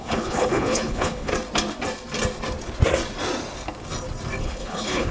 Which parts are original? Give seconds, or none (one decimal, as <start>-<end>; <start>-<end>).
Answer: 1.3-4.4